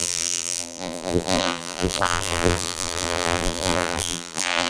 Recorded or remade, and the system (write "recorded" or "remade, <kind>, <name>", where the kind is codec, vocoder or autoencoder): remade, vocoder, BigVGAN v2